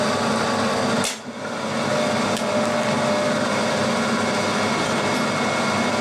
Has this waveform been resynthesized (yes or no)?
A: no